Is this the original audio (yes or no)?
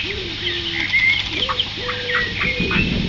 yes